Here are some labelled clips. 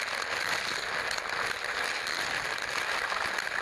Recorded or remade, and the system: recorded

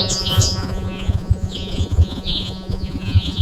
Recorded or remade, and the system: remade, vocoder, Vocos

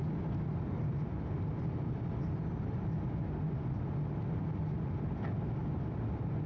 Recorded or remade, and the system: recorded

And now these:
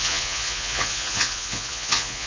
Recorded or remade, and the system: remade, vocoder, Vocos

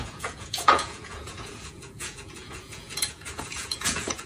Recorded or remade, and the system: remade, vocoder, Vocos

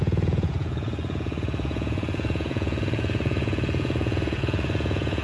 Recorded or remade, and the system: remade, vocoder, Vocos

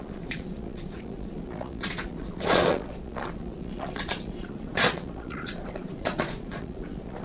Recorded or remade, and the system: remade, vocoder, Vocos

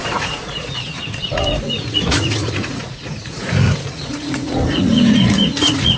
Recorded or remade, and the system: remade, vocoder, Vocos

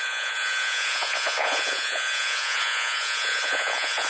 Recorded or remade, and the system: remade, vocoder, Vocos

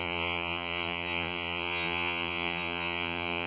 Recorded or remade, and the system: remade, vocoder, Vocos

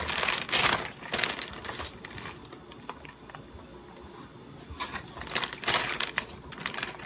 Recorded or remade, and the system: recorded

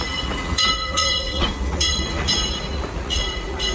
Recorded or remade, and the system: remade, vocoder, Vocos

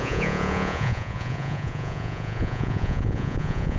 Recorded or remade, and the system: remade, vocoder, Vocos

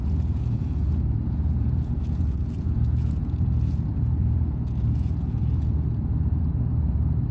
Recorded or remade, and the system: remade, vocoder, Vocos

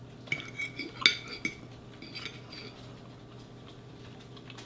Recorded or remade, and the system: recorded